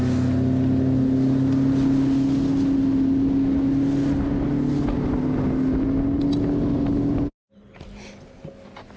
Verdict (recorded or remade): recorded